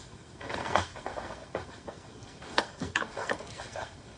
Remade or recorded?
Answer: remade